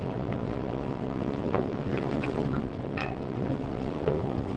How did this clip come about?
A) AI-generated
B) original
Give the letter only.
A